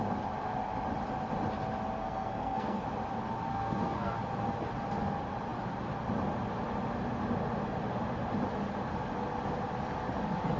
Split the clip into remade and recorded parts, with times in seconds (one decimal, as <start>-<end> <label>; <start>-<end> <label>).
0.0-2.0 recorded; 2.0-2.8 remade; 2.8-3.5 recorded; 3.5-4.1 remade; 4.1-10.6 recorded